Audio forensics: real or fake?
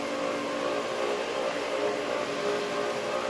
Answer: real